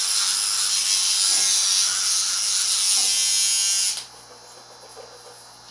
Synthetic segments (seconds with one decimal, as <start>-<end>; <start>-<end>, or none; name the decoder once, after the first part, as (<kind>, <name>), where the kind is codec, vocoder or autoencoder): none